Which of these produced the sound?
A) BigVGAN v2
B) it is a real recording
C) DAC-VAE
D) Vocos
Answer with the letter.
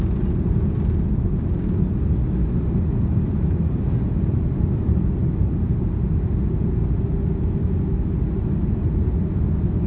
B